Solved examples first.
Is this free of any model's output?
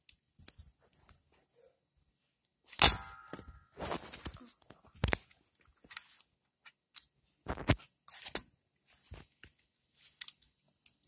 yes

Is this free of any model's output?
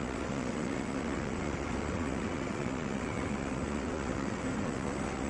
no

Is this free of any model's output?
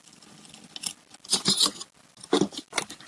yes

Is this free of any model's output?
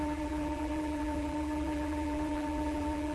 no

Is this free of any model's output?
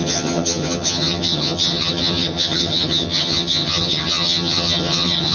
no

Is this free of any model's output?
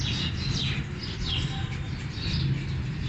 yes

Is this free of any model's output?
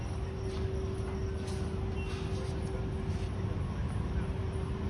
yes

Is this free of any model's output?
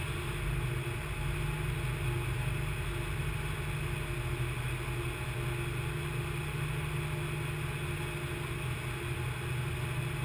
yes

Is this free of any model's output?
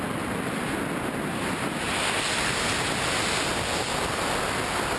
yes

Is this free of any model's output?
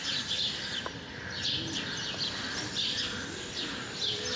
yes